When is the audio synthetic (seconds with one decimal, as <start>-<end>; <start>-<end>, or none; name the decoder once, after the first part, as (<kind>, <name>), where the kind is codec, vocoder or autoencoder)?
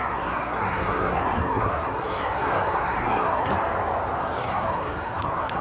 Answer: 0.0-3.5 (codec, SNAC); 4.2-5.6